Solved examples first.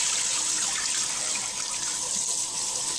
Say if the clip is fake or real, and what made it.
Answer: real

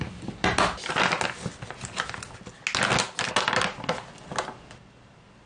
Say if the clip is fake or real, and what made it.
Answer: real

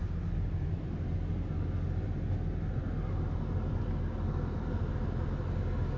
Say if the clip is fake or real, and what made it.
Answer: real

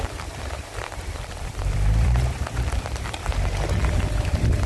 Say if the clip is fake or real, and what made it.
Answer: fake, vocoder, BigVGAN v2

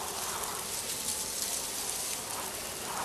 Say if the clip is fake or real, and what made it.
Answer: real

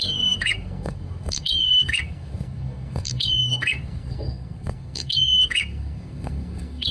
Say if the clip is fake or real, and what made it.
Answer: fake, codec, SNAC